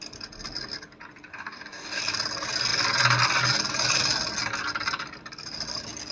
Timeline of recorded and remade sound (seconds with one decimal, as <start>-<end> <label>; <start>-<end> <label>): 0.0-1.3 recorded; 1.3-2.0 remade; 2.0-6.1 recorded